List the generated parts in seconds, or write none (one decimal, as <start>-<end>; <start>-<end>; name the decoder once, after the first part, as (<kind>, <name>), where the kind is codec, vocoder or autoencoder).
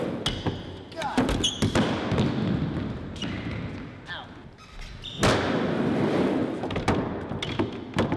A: none